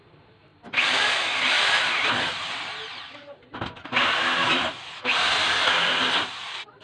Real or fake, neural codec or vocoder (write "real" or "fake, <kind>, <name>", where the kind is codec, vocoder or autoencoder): real